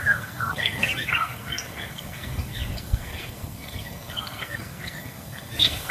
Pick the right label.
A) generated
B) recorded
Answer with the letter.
A